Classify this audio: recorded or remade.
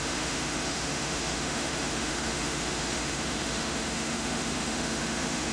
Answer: remade